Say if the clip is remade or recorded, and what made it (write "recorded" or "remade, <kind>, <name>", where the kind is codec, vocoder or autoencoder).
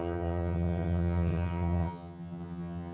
remade, vocoder, HiFi-GAN